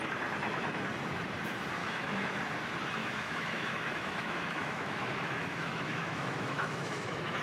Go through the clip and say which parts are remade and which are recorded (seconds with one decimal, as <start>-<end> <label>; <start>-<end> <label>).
0.0-1.8 recorded; 1.8-2.4 remade; 2.4-3.0 recorded; 3.0-7.4 remade